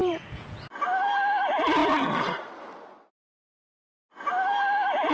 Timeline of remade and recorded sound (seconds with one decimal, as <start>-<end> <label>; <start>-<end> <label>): 0.0-0.7 remade; 0.7-5.1 recorded